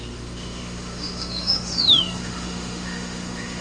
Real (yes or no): no